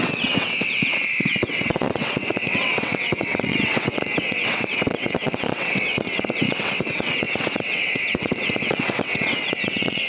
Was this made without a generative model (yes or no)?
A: no